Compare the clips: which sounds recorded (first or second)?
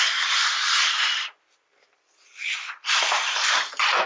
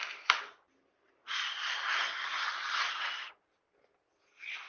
second